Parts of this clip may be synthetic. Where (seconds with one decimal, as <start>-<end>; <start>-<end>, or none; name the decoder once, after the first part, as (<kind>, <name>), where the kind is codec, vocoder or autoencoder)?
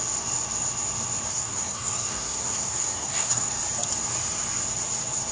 1.3-3.5 (codec, SNAC)